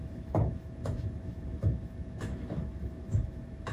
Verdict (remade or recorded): remade